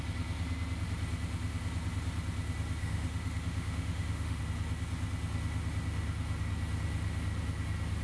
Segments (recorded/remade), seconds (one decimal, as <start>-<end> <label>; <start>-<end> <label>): 0.0-2.8 recorded; 2.8-4.4 remade; 4.4-8.0 recorded